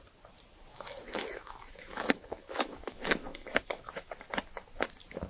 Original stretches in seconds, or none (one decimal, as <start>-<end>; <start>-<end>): 0.0-0.7; 3.9-5.3